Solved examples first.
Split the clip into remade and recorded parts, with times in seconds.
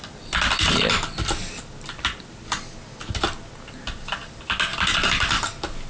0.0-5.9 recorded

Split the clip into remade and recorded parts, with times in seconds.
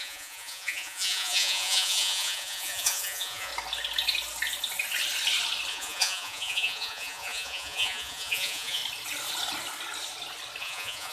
0.0-3.5 remade; 3.5-5.7 recorded; 5.7-8.8 remade; 8.8-10.6 recorded; 10.6-11.1 remade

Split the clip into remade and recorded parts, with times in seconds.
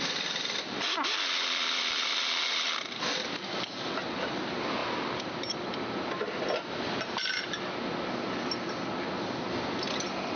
0.0-10.4 recorded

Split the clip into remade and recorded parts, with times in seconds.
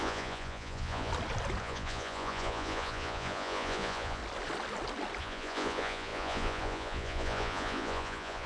0.0-1.1 remade; 1.1-1.6 recorded; 1.6-4.2 remade; 4.2-5.2 recorded; 5.2-8.5 remade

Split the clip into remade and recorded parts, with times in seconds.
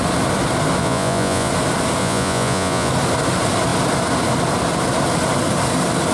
0.0-0.8 recorded; 0.8-1.5 remade; 1.5-2.0 recorded; 2.0-2.9 remade; 2.9-6.1 recorded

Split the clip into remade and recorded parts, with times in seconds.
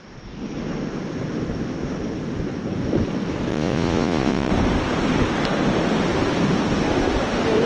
0.0-3.5 recorded; 3.5-4.5 remade; 4.5-7.7 recorded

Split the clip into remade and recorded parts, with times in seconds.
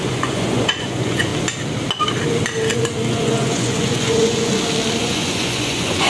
0.0-1.3 remade; 1.3-3.1 recorded; 3.1-4.5 remade; 4.5-5.0 recorded; 5.0-6.1 remade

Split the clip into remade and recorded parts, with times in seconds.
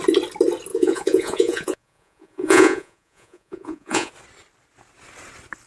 0.0-0.7 recorded; 0.7-4.1 remade; 4.1-5.7 recorded